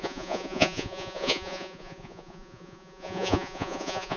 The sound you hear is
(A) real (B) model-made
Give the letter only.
B